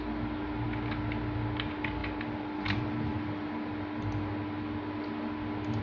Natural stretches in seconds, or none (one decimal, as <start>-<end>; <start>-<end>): 0.0-5.8